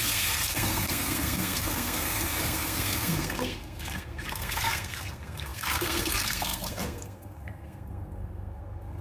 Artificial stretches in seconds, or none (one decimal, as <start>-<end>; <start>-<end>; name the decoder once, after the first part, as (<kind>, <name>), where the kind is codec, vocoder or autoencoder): 0.0-9.0 (codec, SNAC)